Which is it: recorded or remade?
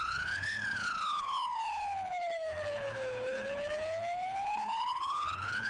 remade